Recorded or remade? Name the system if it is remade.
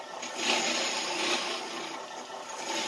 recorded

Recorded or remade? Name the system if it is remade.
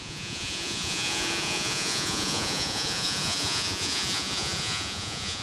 remade, vocoder, Vocos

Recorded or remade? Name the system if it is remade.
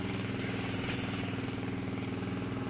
recorded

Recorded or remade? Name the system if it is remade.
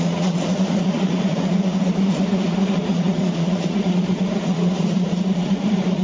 remade, vocoder, Vocos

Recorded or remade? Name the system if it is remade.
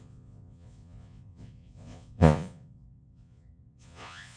remade, vocoder, Vocos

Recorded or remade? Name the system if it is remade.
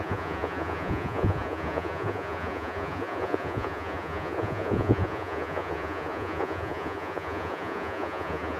remade, vocoder, Vocos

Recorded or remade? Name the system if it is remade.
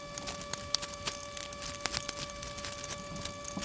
recorded